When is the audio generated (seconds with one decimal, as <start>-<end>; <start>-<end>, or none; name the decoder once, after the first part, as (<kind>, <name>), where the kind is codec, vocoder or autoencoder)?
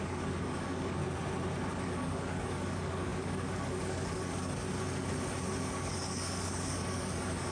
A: 0.0-1.0 (codec, DAC); 1.7-4.6; 5.7-7.5